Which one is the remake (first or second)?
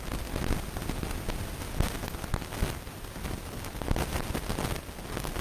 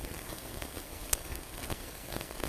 second